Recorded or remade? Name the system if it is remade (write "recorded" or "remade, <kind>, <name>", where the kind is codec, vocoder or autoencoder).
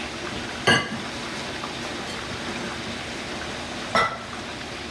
recorded